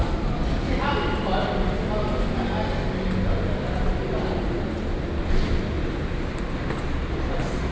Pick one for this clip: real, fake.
real